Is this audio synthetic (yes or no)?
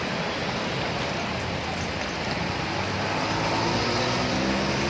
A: no